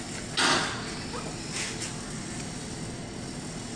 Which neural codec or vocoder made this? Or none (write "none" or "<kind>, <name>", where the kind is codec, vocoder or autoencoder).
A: none